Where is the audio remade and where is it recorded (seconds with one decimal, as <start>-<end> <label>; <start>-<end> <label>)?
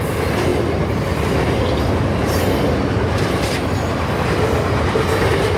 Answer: 0.0-5.6 recorded